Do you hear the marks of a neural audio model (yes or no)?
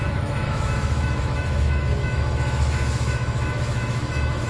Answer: yes